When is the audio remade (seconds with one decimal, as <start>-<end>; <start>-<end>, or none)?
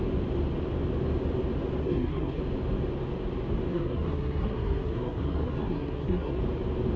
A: 1.8-2.4; 3.7-6.4